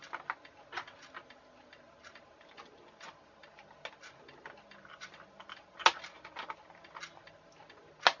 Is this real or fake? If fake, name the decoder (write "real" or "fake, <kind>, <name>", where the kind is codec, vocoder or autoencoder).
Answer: real